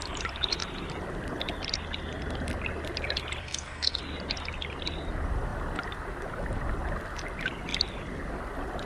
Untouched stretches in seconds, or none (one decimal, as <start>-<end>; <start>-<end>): 0.0-3.4; 4.0-8.9